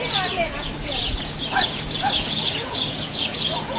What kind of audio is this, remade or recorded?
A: remade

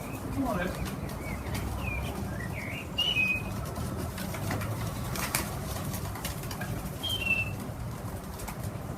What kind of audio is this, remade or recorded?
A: remade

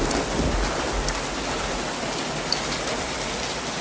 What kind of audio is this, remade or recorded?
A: recorded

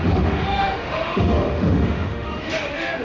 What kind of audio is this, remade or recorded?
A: remade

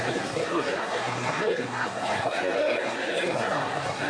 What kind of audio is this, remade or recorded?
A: remade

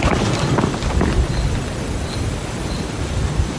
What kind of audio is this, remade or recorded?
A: remade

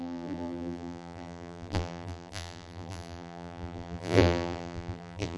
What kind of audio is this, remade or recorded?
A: remade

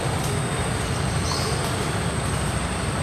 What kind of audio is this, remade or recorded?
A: recorded